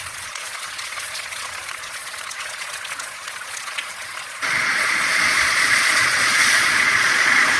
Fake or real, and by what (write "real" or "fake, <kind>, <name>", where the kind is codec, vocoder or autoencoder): fake, vocoder, Vocos